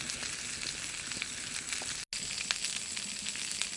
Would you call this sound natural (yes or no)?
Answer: yes